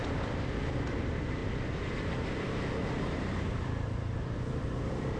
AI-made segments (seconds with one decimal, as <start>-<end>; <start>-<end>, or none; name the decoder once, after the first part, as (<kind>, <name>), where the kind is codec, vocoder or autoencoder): 0.0-1.4 (vocoder, BigVGAN v2); 1.9-5.2